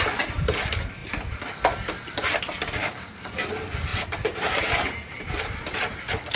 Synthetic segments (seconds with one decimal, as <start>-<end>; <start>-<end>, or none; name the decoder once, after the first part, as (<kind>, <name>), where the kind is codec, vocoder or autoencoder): 2.8-3.5 (codec, DAC)